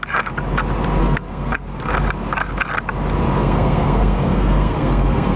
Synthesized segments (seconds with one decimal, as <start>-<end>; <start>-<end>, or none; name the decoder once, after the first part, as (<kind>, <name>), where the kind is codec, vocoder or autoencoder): 1.0-1.9 (codec, SNAC); 3.4-5.4